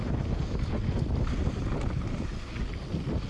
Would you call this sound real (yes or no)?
yes